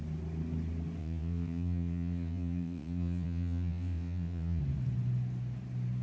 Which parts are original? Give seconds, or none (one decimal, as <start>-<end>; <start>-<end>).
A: 0.0-1.0; 4.6-6.0